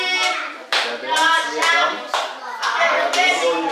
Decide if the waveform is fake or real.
fake